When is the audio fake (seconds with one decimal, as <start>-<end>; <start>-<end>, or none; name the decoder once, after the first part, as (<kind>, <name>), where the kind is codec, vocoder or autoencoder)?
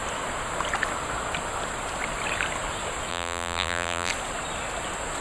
3.1-4.1 (vocoder, BigVGAN v2)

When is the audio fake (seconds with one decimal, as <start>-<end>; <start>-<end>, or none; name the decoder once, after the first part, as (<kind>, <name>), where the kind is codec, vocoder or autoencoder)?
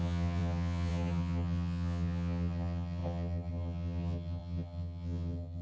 0.0-5.6 (vocoder, HiFi-GAN)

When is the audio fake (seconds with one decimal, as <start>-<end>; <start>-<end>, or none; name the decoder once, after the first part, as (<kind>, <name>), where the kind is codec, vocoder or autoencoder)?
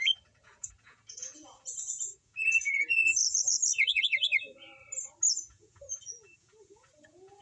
0.0-4.7 (vocoder, Vocos); 5.3-7.4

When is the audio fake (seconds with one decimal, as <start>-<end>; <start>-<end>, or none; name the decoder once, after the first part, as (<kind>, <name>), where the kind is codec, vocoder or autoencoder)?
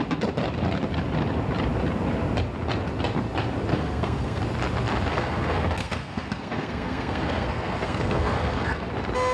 3.7-4.4 (codec, SNAC); 5.1-8.9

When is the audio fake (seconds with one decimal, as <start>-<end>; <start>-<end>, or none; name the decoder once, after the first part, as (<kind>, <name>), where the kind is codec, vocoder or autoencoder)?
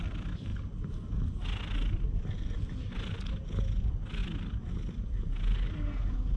none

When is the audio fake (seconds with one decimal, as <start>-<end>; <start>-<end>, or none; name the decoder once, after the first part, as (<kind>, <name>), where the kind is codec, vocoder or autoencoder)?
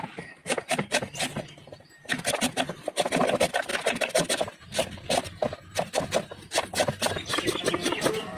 0.4-3.3 (vocoder, BigVGAN v2); 3.7-5.2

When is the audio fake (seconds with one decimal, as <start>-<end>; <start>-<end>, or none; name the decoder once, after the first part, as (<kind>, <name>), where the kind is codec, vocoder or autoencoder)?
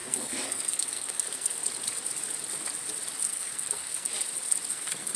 0.0-1.6 (codec, SNAC); 3.2-4.1; 4.7-5.2